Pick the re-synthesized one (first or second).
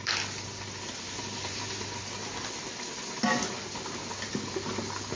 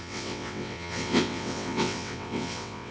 second